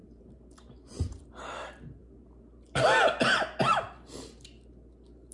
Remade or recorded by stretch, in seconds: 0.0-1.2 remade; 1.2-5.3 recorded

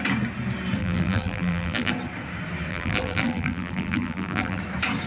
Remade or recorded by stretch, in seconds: 0.0-0.8 recorded; 0.8-1.9 remade; 1.9-2.7 recorded; 2.7-4.6 remade; 4.6-5.1 recorded

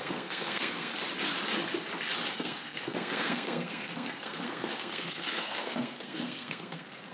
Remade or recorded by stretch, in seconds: 0.0-0.9 remade; 0.9-2.3 recorded; 2.3-7.1 remade

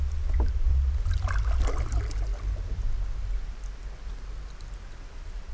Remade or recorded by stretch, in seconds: 0.0-5.5 recorded

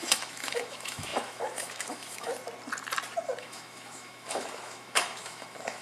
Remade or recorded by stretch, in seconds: 0.0-2.3 remade; 2.3-3.4 recorded; 3.4-5.8 remade

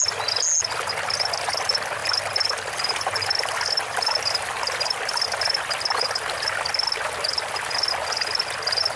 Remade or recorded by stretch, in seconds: 0.0-2.0 recorded; 2.0-5.4 remade; 5.4-9.0 recorded